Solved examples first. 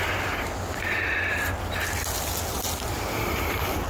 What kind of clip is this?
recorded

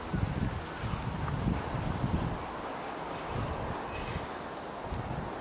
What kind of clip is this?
recorded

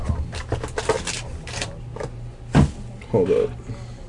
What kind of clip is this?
recorded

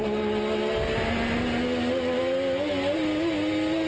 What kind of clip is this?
recorded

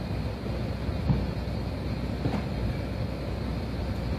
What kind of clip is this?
recorded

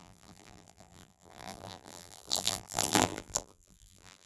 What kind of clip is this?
remade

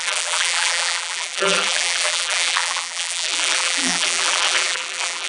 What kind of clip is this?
remade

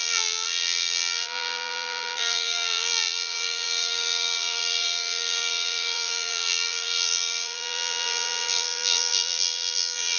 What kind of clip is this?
remade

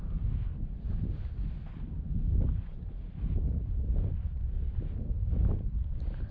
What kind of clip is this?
recorded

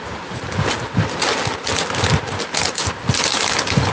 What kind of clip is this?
recorded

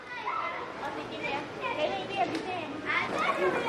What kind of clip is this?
recorded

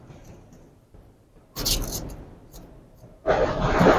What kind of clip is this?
recorded